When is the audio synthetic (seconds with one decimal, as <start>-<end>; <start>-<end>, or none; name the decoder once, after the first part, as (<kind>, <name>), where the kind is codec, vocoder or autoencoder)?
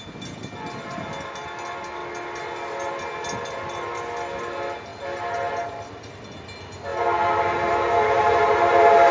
none